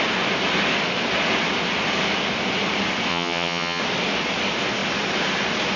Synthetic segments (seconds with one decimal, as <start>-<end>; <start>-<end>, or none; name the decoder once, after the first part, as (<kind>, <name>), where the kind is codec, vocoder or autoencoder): 3.1-3.8 (vocoder, HiFi-GAN)